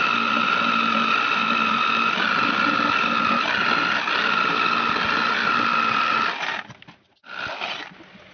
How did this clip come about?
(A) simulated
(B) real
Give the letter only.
B